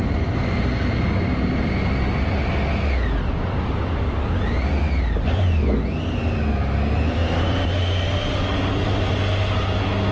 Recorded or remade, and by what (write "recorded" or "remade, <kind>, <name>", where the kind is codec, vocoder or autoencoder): recorded